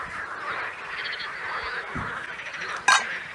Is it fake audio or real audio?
real